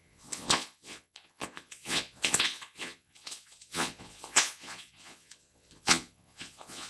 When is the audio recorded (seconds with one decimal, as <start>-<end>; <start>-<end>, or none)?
none